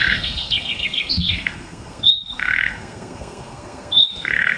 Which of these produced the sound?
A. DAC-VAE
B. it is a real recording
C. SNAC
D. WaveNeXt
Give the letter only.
C